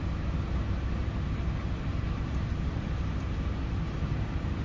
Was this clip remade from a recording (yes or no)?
yes